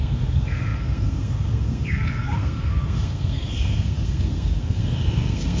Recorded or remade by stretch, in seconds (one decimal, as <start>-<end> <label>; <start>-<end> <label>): 0.0-5.6 remade